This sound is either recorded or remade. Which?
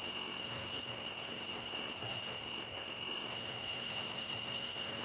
remade